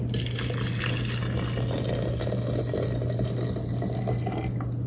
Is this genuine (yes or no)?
yes